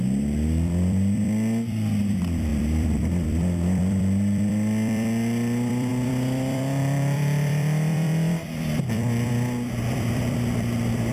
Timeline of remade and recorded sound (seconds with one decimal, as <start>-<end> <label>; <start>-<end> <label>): 0.0-11.1 remade